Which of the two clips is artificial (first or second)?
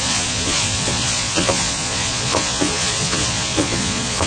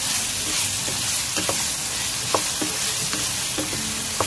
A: first